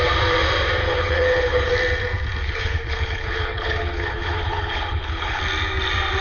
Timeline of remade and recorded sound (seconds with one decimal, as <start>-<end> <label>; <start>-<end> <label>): 0.0-0.8 recorded; 0.8-1.7 remade; 1.7-2.4 recorded; 2.4-5.4 remade; 5.4-6.2 recorded